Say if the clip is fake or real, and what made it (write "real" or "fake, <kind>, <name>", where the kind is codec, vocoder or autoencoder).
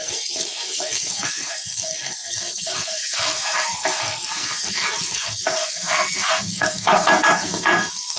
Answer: fake, codec, SNAC